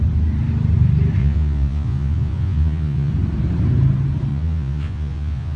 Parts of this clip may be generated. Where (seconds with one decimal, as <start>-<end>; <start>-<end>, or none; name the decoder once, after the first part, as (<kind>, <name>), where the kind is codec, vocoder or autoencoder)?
1.2-3.1 (vocoder, Vocos); 4.3-5.6